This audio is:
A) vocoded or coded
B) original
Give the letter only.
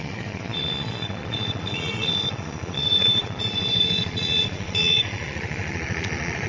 A